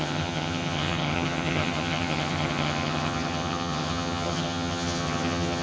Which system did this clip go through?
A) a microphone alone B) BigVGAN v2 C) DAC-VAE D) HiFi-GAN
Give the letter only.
D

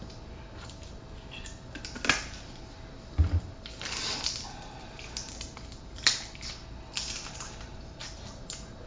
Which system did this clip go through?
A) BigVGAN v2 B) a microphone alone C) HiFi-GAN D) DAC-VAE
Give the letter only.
B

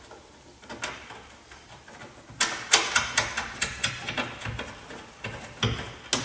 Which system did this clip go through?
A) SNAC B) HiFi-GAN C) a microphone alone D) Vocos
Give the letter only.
C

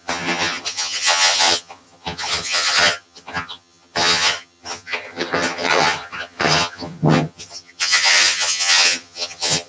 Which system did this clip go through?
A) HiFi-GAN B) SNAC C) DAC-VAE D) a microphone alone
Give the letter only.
A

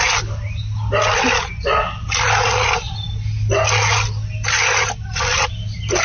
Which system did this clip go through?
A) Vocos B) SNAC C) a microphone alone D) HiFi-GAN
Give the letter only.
C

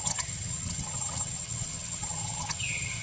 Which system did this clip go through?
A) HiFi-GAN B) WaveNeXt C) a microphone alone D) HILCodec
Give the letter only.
A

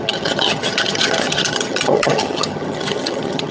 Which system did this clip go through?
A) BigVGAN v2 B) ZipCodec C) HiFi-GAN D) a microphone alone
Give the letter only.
C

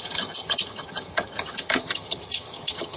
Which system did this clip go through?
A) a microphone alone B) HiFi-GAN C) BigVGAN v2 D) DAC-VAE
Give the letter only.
B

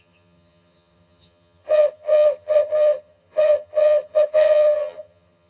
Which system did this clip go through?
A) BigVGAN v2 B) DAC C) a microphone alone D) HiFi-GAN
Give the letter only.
D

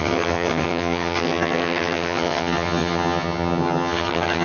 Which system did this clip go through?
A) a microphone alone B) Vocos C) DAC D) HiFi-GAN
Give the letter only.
D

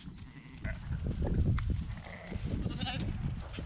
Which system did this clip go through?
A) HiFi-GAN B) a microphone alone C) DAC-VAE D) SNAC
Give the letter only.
B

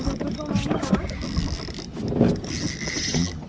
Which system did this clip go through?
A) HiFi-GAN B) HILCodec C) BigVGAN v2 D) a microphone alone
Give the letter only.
D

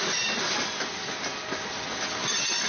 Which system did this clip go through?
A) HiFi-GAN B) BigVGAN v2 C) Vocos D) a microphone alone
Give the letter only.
D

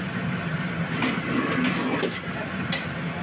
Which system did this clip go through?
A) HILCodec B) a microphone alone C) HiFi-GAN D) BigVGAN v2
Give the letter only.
B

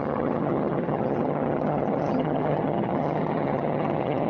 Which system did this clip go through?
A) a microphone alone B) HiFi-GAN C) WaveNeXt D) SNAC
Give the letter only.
B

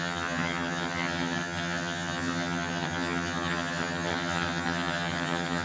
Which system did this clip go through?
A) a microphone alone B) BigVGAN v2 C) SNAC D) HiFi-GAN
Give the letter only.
D